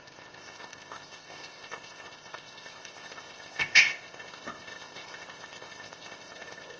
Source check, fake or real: fake